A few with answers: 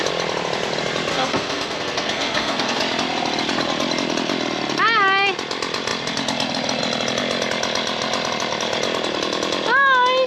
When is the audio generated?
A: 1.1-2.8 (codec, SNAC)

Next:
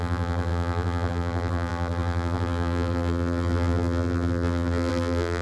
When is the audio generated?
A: 0.0-5.4 (vocoder, BigVGAN v2)

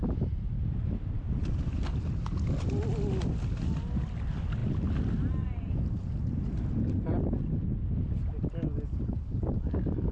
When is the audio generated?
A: none

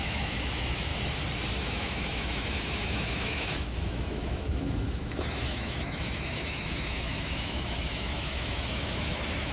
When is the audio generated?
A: 0.0-0.9 (autoencoder, DAC-VAE); 1.6-9.5

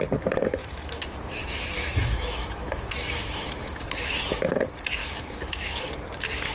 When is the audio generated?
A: 0.6-4.5 (autoencoder, DAC-VAE); 5.0-5.8

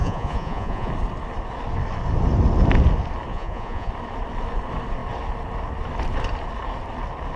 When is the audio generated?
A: 0.0-0.9 (vocoder, Vocos); 3.3-3.9

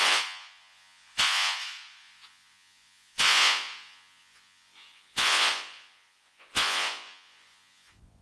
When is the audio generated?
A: 0.0-8.2 (vocoder, Vocos)